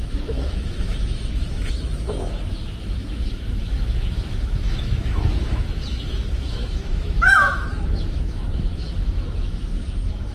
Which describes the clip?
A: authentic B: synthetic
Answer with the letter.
B